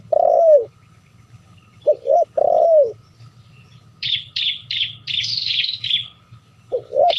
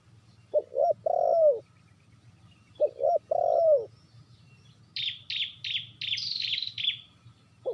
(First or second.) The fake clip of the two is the first